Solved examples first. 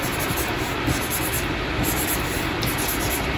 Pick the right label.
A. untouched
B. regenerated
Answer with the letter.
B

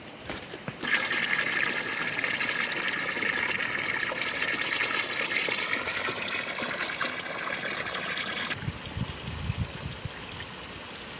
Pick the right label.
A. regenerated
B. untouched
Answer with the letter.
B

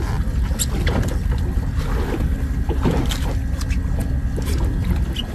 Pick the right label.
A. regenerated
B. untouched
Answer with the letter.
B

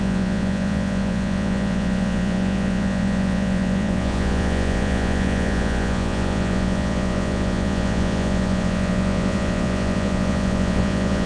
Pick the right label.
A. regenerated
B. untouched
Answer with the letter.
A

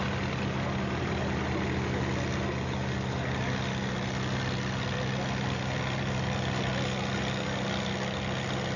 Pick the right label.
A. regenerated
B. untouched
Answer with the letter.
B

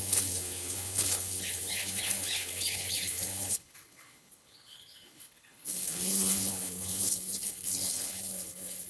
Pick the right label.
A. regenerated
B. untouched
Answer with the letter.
A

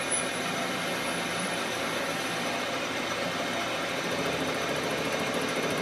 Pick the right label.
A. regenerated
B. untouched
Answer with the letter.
A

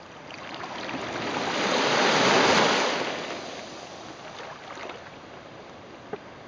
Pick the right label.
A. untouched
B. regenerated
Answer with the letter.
A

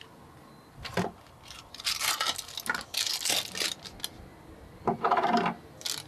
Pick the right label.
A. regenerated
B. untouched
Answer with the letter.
B